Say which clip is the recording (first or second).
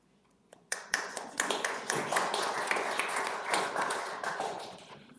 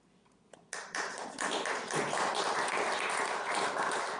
second